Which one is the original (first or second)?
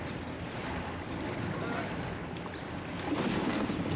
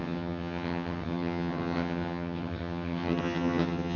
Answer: first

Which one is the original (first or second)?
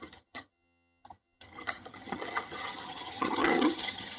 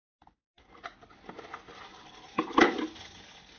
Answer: second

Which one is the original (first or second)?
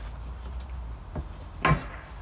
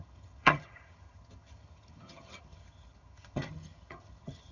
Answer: first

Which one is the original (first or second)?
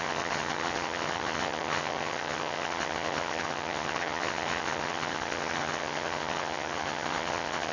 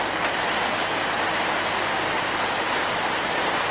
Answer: second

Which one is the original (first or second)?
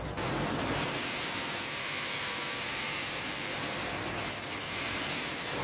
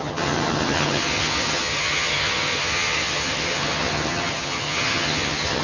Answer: first